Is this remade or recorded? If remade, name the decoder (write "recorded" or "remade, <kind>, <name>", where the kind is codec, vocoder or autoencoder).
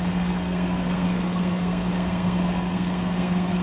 remade, codec, SNAC